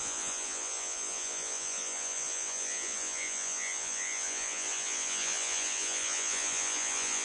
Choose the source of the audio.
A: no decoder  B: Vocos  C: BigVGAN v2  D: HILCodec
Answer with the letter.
B